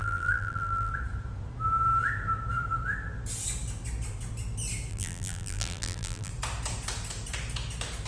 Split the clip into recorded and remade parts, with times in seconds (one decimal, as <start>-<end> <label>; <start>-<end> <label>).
0.0-0.9 remade; 0.9-4.9 recorded; 4.9-6.3 remade; 6.3-8.1 recorded